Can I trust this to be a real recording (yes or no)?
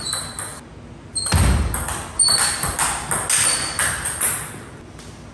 yes